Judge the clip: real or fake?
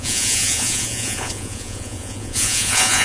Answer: fake